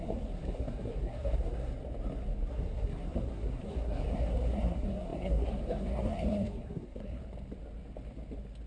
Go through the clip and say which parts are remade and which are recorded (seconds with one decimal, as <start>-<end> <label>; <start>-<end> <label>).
0.0-1.7 remade; 1.7-2.5 recorded; 2.5-7.2 remade; 7.2-8.7 recorded